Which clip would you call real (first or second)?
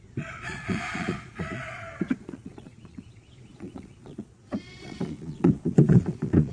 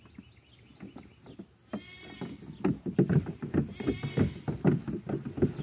second